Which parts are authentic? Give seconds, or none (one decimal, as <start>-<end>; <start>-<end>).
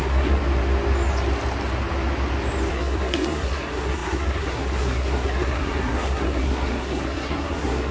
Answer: 0.4-2.7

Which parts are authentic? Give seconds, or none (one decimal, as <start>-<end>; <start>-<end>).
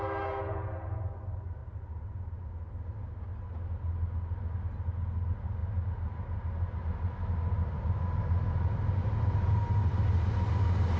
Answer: 0.0-1.6; 2.5-11.0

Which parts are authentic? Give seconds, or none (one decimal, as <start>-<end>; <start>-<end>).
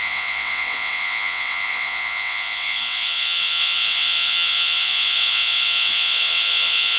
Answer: none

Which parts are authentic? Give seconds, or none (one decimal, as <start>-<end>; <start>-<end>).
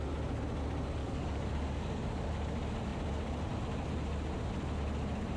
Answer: 0.0-1.0; 2.3-5.4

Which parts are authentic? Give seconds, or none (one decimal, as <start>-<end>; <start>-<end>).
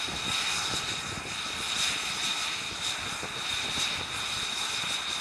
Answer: 0.0-5.2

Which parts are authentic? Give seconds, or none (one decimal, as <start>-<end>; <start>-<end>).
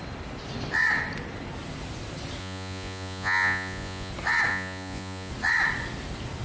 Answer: 0.0-2.4; 4.1-4.5; 5.3-6.4